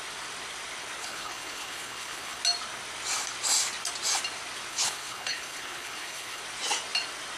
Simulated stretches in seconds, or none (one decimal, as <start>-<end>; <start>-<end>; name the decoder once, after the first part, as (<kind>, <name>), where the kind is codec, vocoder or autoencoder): 1.0-2.4 (codec, HILCodec); 4.7-6.4